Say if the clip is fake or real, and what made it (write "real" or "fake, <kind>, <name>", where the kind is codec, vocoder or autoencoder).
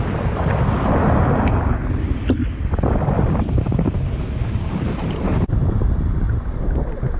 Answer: real